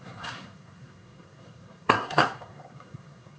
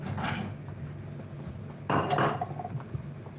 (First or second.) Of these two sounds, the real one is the second